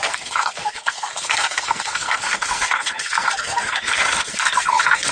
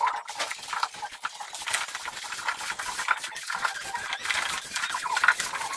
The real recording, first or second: second